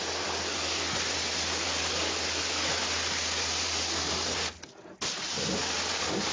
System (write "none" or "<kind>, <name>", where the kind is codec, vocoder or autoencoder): none